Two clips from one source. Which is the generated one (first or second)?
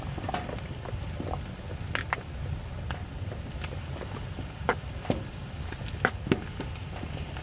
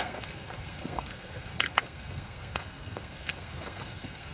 second